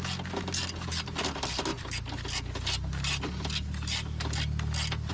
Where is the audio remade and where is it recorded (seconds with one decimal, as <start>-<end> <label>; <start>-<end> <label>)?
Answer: 0.0-5.1 recorded